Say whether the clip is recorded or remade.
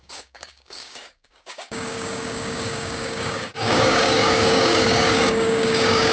remade